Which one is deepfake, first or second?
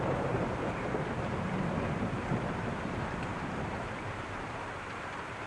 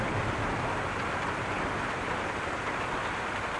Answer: first